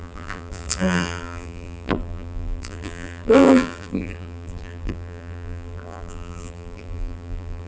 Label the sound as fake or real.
fake